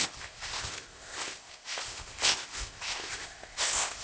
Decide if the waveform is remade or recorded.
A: remade